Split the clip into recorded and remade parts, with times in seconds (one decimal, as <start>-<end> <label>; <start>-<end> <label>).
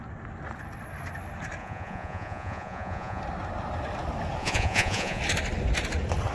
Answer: 0.0-1.6 recorded; 1.6-3.2 remade; 3.2-4.4 recorded; 4.4-5.2 remade; 5.2-6.3 recorded